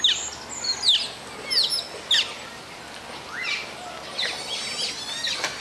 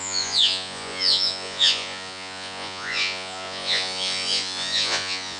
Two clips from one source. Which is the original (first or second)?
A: first